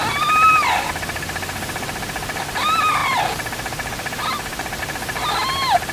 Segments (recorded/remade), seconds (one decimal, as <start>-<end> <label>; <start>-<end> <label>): 0.0-5.9 recorded